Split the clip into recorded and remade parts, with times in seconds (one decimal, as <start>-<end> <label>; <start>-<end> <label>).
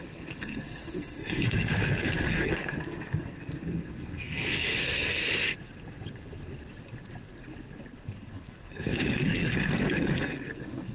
0.0-5.2 remade; 5.2-8.0 recorded; 8.0-10.9 remade